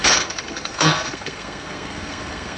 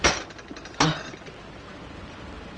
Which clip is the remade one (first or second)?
first